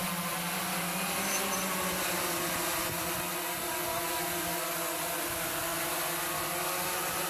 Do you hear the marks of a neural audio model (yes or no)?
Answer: no